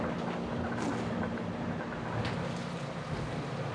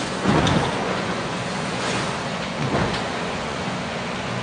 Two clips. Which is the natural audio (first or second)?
first